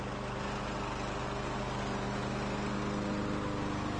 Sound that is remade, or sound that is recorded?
recorded